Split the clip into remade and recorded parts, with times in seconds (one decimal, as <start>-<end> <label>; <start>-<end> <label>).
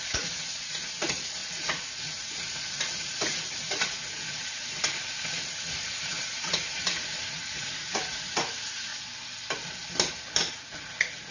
0.0-8.9 remade; 8.9-10.5 recorded; 10.5-11.3 remade